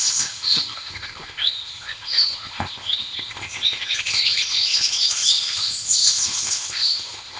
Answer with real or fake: fake